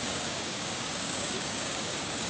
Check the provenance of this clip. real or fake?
fake